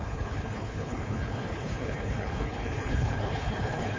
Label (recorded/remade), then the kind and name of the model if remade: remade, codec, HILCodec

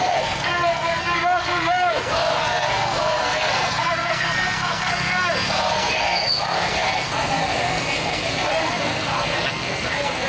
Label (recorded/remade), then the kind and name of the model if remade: remade, codec, SNAC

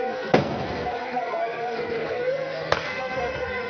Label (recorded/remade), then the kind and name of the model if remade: remade, codec, SNAC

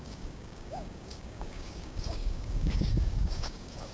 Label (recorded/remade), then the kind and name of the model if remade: remade, codec, DAC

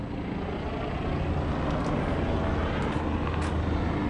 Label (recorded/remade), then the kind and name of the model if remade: recorded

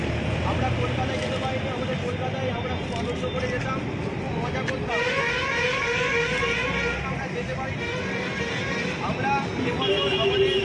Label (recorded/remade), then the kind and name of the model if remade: recorded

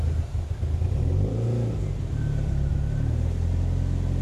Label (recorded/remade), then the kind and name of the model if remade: recorded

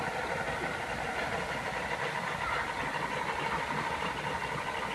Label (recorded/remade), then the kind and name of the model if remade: recorded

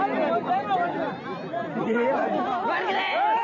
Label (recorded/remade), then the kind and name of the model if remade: recorded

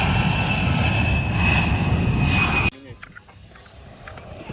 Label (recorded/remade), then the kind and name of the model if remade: recorded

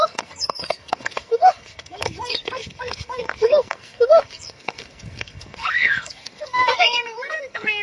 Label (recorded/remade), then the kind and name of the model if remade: remade, codec, SNAC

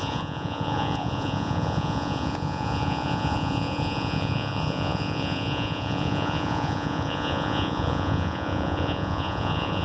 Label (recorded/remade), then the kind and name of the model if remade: remade, vocoder, Vocos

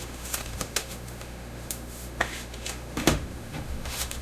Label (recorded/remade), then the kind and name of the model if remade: remade, autoencoder, DAC-VAE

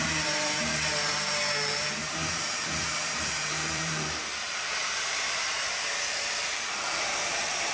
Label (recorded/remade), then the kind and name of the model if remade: remade, vocoder, BigVGAN v2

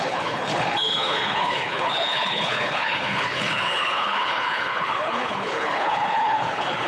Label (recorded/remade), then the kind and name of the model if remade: remade, codec, HILCodec